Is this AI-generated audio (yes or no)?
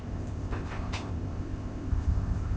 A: yes